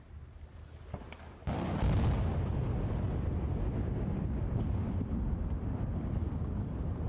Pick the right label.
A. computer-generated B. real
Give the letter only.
B